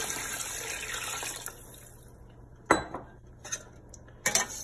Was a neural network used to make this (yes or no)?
no